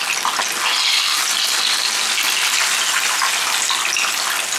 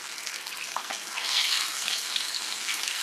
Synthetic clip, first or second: second